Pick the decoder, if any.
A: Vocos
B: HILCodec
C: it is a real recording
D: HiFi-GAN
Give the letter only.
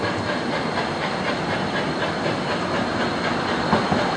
C